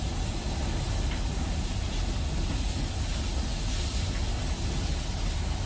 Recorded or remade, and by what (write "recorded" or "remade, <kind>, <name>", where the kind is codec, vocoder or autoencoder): recorded